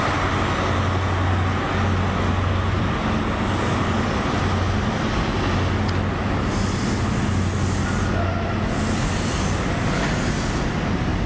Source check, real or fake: real